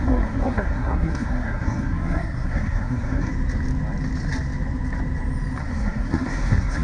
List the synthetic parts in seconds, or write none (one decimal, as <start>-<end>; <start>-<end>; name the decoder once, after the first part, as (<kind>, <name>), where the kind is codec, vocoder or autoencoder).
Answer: 0.0-3.3 (codec, SNAC); 5.6-6.8